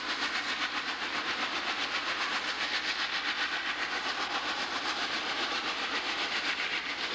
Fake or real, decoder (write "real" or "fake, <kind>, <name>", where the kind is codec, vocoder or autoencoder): real